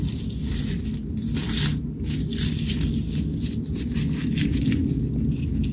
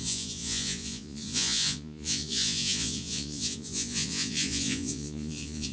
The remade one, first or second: second